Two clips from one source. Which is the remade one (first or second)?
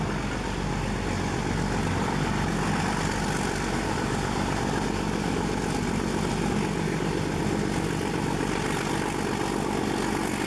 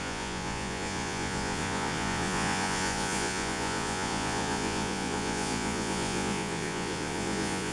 second